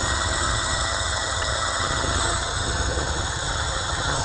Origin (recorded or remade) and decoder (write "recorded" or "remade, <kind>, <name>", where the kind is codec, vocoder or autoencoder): remade, vocoder, HiFi-GAN